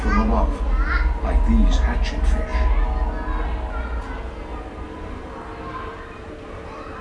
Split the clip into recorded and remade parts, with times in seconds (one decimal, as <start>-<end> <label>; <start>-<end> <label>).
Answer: 0.0-4.5 recorded; 4.5-5.4 remade; 5.4-5.9 recorded; 5.9-7.0 remade